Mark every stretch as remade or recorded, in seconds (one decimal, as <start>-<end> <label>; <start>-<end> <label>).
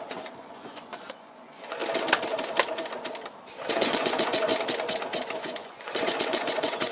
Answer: 0.0-1.8 remade; 1.8-3.7 recorded; 3.7-4.5 remade; 4.5-5.4 recorded; 5.4-6.9 remade